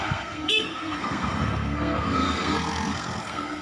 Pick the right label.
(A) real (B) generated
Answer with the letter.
B